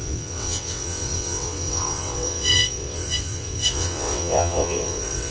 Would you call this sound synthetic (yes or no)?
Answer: yes